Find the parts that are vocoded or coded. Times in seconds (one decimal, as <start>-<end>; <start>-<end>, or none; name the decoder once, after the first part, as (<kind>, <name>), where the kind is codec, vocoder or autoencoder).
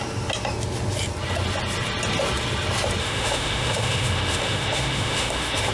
3.0-5.7 (autoencoder, DAC-VAE)